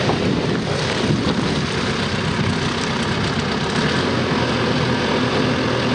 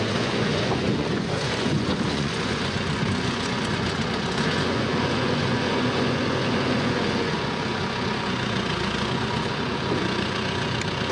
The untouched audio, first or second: first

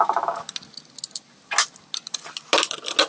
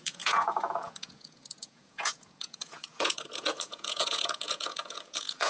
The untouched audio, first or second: first